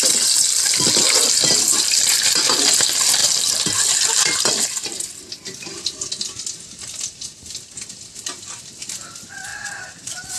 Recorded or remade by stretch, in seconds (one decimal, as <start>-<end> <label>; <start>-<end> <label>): 0.0-9.5 recorded; 9.5-10.4 remade